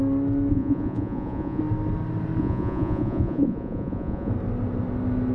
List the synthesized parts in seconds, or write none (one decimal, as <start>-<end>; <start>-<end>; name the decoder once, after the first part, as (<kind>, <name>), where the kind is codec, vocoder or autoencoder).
0.5-1.6 (vocoder, Vocos); 2.4-4.3